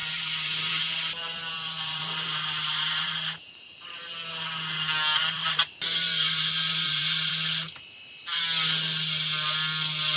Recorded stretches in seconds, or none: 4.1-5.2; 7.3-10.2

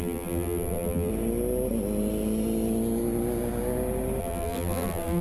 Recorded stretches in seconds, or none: 1.1-4.2

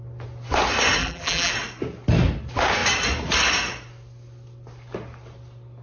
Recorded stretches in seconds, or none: 0.0-1.0; 1.5-5.8